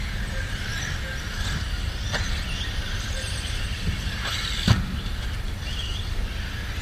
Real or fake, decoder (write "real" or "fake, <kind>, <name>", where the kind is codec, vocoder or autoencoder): real